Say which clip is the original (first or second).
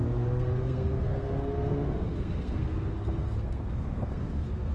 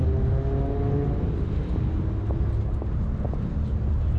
second